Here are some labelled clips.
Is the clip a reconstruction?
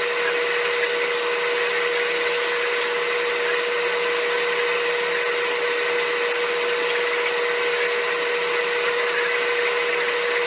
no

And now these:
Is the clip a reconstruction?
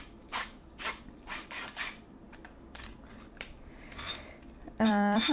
yes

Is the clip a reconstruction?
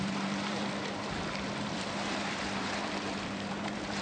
yes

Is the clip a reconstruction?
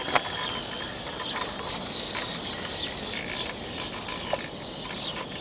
no